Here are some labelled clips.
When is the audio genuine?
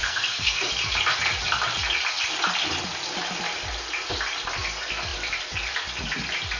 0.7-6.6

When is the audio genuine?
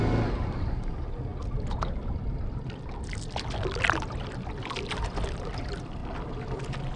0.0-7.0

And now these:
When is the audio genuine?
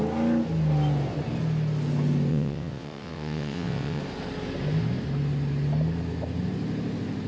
0.0-2.3; 4.0-7.3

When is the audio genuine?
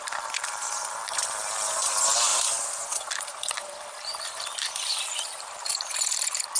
none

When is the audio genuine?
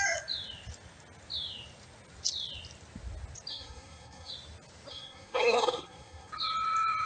0.0-3.5; 4.3-4.9; 6.3-7.1